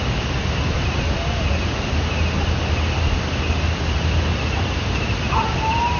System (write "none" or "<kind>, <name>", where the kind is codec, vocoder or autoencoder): none